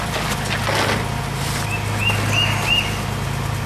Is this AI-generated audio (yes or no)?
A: no